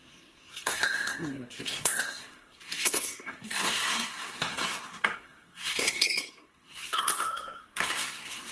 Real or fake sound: fake